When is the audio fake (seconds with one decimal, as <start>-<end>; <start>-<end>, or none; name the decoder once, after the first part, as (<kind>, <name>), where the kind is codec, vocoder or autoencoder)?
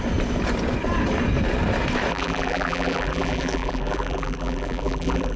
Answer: 2.1-5.4 (vocoder, BigVGAN v2)